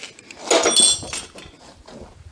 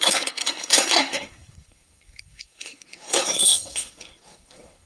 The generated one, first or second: second